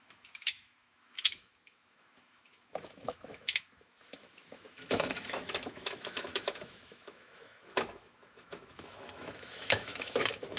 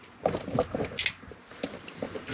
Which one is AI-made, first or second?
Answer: first